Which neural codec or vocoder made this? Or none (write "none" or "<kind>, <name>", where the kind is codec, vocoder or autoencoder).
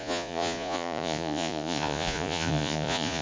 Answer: vocoder, Vocos